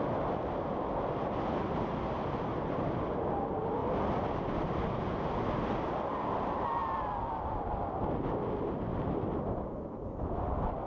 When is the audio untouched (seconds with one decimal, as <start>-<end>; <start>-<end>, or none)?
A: 0.0-3.8; 5.0-8.9; 9.5-10.9